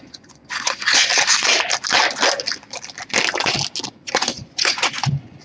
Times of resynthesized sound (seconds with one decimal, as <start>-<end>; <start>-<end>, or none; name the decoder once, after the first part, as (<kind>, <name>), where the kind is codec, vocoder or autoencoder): 0.0-1.1 (vocoder, Vocos); 3.9-5.4